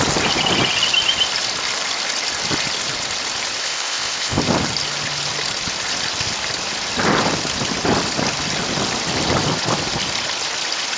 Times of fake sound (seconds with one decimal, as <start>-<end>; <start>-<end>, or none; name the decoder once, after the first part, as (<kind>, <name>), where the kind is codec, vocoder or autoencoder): 3.6-4.4 (codec, ZipCodec)